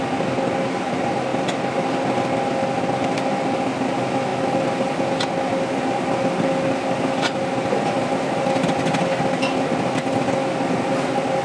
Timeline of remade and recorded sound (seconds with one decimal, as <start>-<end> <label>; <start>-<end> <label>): 0.0-11.4 recorded